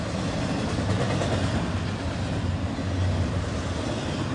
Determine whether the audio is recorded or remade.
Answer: recorded